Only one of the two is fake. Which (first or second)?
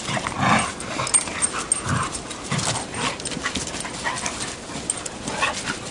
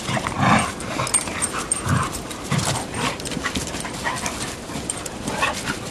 second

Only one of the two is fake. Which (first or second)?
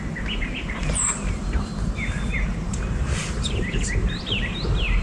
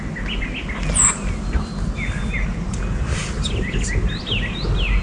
first